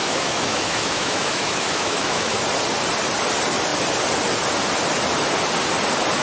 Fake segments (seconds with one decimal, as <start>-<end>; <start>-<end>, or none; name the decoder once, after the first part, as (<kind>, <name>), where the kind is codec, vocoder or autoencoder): 0.0-2.4 (autoencoder, DAC-VAE)